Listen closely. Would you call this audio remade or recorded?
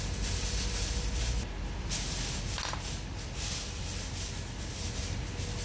recorded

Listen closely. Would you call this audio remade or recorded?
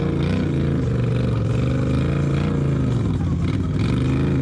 recorded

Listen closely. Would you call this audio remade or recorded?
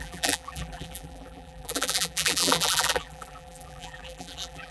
remade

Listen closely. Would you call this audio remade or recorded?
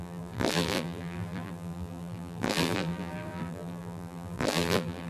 remade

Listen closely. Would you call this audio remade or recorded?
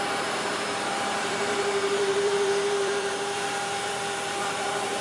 remade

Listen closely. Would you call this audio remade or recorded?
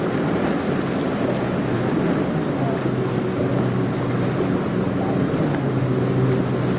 recorded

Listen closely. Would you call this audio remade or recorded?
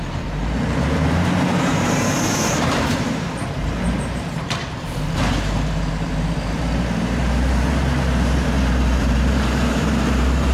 remade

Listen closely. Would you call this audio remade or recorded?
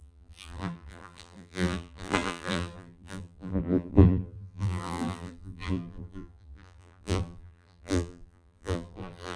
remade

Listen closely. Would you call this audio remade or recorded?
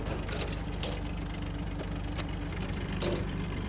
remade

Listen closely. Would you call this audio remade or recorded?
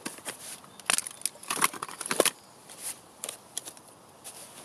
recorded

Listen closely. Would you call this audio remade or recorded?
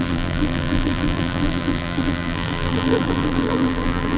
remade